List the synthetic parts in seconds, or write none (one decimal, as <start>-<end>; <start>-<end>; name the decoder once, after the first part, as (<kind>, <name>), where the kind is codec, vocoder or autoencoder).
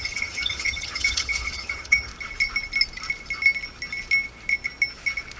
0.0-2.1 (vocoder, HiFi-GAN)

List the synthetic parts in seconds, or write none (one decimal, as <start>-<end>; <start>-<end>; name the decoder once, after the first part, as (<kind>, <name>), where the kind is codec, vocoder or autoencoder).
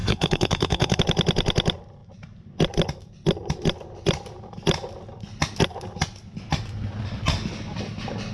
0.0-1.0 (codec, SNAC)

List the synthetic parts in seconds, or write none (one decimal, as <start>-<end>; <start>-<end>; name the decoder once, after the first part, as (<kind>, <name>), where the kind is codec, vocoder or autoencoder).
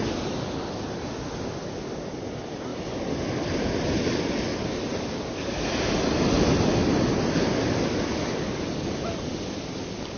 none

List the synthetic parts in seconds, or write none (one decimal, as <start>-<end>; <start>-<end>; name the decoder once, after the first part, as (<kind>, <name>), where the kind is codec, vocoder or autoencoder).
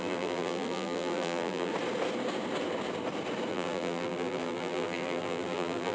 0.0-1.7 (vocoder, BigVGAN v2); 3.5-5.9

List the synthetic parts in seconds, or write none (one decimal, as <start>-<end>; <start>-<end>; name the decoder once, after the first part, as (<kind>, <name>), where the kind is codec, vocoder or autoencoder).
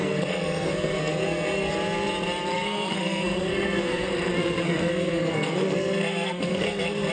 0.0-1.7 (codec, SNAC); 2.5-7.1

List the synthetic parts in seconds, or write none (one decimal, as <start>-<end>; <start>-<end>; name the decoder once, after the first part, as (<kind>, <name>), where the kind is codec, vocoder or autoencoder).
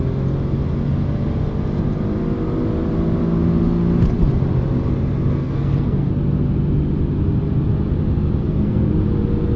5.3-6.1 (codec, SNAC); 8.4-8.9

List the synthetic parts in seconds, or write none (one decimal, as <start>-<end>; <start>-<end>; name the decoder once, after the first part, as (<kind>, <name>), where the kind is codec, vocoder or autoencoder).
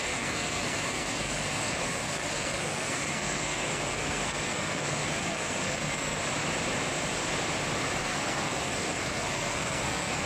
0.0-6.2 (codec, SNAC); 8.0-10.3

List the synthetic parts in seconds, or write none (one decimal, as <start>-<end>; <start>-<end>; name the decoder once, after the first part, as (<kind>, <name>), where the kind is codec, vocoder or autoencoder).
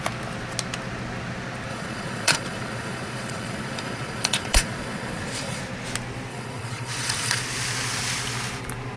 1.7-5.6 (vocoder, Vocos); 6.3-7.4